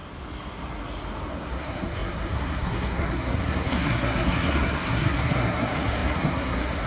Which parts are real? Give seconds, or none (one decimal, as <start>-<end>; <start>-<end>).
0.0-1.3